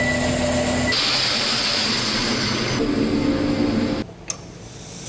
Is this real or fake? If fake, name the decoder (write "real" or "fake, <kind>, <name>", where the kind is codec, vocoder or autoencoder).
real